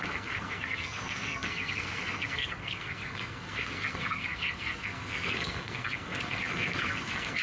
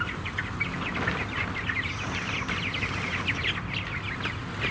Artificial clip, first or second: first